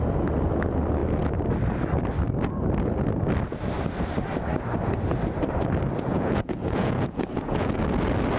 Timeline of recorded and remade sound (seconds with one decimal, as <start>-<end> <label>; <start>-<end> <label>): 0.0-6.1 recorded; 6.1-7.8 remade; 7.8-8.4 recorded